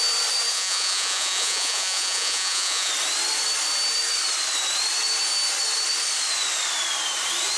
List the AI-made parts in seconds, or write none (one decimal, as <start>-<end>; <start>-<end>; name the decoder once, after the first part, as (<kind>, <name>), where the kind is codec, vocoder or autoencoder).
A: 0.5-2.9 (vocoder, Vocos)